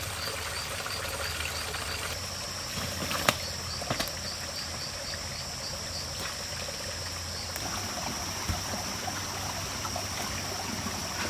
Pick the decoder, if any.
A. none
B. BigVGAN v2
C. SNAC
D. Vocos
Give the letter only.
A